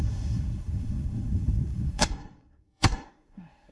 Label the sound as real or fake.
fake